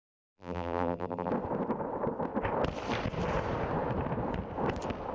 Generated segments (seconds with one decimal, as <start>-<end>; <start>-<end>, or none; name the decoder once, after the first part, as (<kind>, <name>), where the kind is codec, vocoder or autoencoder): 0.0-1.3 (vocoder, BigVGAN v2)